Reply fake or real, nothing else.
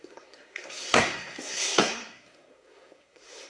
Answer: fake